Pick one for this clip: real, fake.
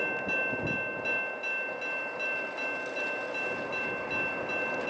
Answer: real